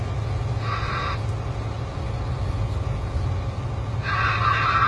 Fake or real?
real